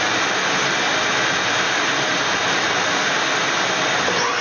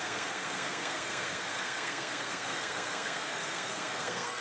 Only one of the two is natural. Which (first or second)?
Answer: first